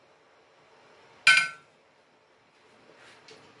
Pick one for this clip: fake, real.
real